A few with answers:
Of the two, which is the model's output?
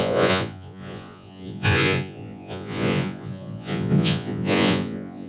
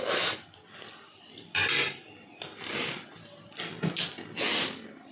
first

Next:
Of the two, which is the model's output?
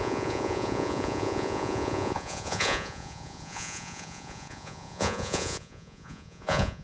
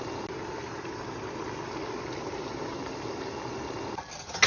first